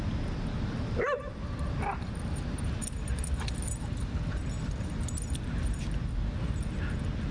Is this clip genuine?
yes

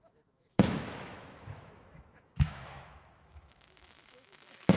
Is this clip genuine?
no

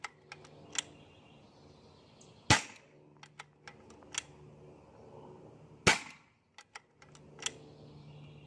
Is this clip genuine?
yes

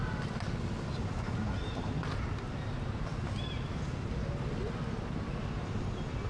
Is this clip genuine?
yes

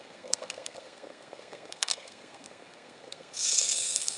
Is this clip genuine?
no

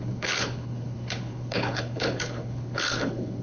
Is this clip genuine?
no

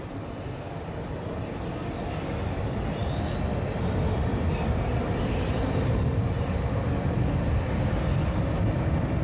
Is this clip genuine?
yes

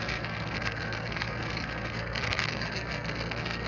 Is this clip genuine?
no